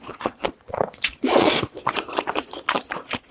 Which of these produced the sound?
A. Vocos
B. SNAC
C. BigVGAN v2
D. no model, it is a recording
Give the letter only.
A